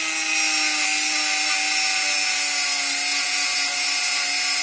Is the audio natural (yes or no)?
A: yes